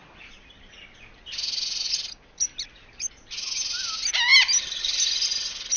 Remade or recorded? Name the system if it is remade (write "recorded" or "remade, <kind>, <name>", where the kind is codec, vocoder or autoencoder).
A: recorded